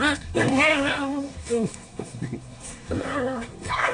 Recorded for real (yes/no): no